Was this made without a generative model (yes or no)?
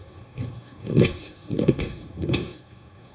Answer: no